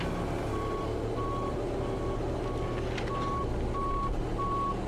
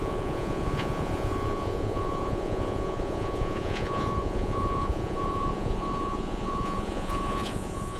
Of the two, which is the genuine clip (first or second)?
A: first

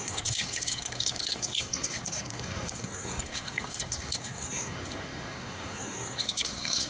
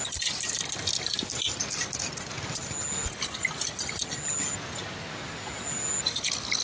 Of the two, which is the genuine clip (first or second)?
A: second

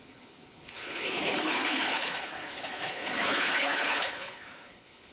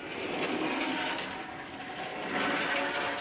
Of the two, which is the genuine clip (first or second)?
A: second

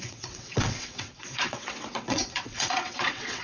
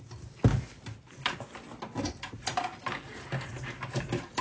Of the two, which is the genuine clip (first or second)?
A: second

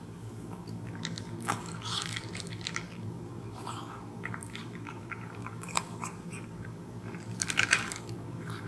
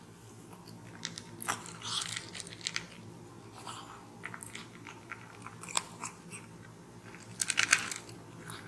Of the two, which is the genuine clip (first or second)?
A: second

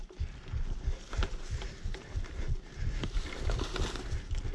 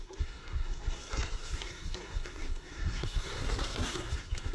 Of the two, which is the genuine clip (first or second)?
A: first